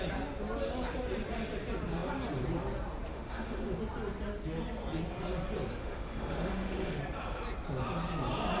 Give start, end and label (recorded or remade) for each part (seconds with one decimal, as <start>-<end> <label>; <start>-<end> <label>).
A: 0.0-3.1 recorded; 3.1-3.8 remade; 3.8-5.8 recorded; 5.8-7.0 remade; 7.0-8.6 recorded